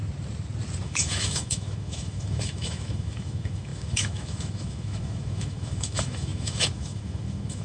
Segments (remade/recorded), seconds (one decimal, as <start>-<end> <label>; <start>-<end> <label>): 0.0-0.8 recorded; 0.8-7.6 remade

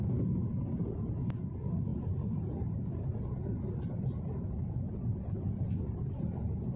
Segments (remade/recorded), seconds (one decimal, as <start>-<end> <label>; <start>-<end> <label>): 0.0-6.8 recorded